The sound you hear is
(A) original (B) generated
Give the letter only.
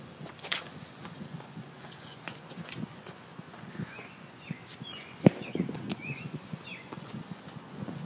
B